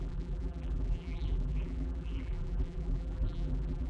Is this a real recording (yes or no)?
no